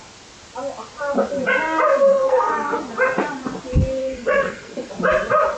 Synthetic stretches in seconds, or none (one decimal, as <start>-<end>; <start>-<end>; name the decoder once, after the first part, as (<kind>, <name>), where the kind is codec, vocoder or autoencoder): 2.1-2.8 (codec, SNAC); 4.0-4.9